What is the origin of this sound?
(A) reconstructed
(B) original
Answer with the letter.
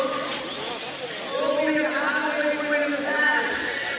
B